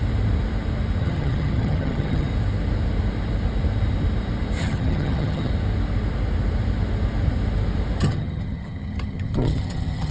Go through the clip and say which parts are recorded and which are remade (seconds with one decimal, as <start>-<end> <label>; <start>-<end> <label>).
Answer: 0.0-1.0 recorded; 1.0-2.3 remade; 2.3-4.6 recorded; 4.6-5.5 remade; 5.5-8.0 recorded; 8.0-10.1 remade